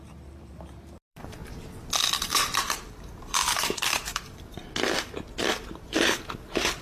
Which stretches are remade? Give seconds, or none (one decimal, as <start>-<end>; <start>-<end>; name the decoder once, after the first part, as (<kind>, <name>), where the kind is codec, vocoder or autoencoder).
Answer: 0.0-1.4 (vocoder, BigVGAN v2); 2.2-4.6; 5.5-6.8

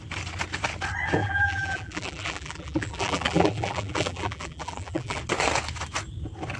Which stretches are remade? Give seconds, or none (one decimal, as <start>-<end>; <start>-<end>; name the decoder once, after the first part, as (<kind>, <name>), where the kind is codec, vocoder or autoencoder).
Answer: 1.2-5.2 (vocoder, BigVGAN v2)

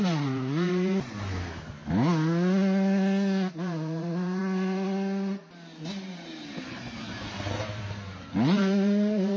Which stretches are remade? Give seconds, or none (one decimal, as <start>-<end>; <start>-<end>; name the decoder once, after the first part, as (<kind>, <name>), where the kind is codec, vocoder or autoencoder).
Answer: 0.0-1.8 (vocoder, BigVGAN v2); 3.5-4.4; 6.0-9.4

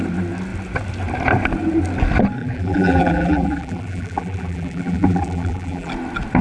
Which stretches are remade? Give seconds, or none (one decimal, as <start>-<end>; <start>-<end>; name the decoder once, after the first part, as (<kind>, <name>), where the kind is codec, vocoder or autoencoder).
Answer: 2.4-5.9 (vocoder, BigVGAN v2)